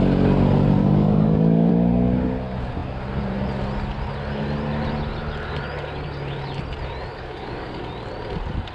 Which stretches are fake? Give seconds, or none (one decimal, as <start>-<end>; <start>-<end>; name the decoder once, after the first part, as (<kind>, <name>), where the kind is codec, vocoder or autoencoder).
0.8-1.7 (codec, DAC); 7.1-7.8